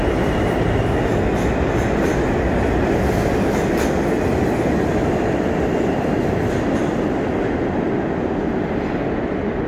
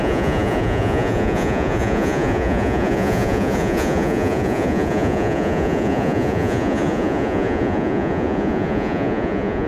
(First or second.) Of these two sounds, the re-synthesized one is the second